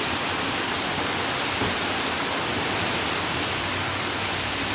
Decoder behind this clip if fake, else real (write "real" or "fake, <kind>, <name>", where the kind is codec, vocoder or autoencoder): real